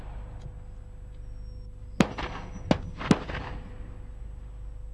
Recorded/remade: recorded